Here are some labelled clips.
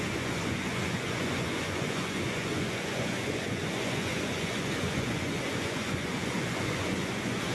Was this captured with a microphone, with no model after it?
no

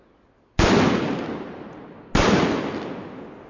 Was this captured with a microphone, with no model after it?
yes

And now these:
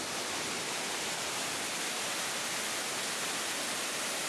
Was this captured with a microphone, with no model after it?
yes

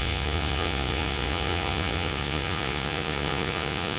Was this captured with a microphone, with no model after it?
no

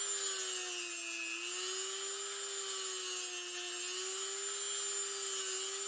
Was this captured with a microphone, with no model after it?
yes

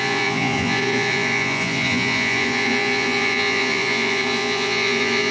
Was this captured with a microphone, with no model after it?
no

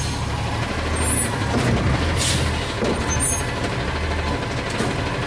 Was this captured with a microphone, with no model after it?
yes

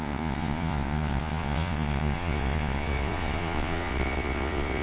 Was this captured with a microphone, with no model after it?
no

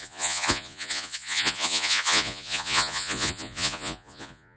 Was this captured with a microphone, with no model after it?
no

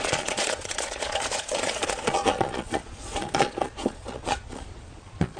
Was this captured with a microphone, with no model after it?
no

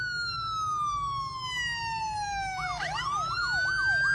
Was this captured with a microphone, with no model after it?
yes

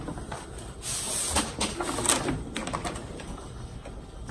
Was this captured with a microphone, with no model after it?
yes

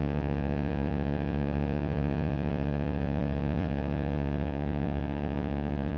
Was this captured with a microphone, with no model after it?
no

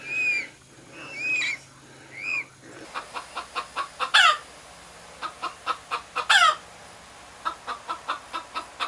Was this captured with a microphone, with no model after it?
yes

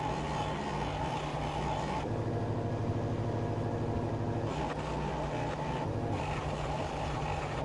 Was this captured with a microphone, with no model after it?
yes